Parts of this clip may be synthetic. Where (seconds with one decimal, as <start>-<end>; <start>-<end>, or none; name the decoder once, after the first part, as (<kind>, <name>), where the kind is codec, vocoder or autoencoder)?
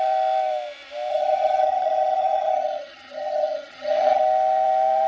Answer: 1.1-4.2 (vocoder, HiFi-GAN)